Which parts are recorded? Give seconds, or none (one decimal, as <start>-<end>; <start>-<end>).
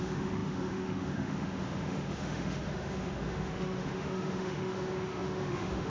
none